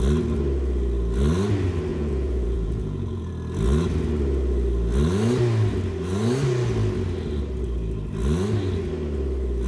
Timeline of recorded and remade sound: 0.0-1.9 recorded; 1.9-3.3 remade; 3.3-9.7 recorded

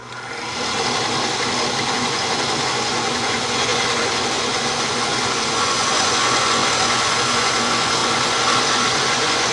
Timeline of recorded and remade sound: 0.0-1.9 recorded; 1.9-9.5 remade

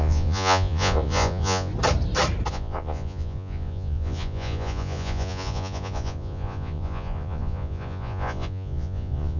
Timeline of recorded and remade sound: 0.0-1.7 remade; 1.7-2.5 recorded; 2.5-9.4 remade

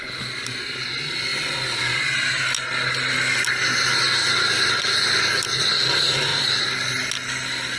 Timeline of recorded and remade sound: 0.0-7.8 recorded

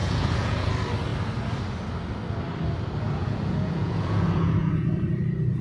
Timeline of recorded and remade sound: 0.0-0.7 remade; 0.7-3.2 recorded; 3.2-4.9 remade; 4.9-5.6 recorded

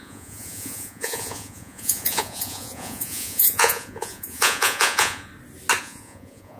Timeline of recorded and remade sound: 0.0-5.3 remade; 5.3-5.8 recorded; 5.8-6.6 remade

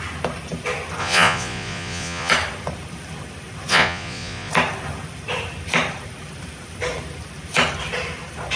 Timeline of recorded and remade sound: 0.0-1.0 recorded; 1.0-2.3 remade; 2.3-3.7 recorded; 3.7-4.5 remade; 4.5-8.6 recorded

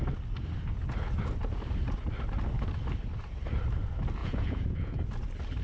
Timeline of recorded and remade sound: 0.0-4.2 recorded; 4.2-5.0 remade; 5.0-5.6 recorded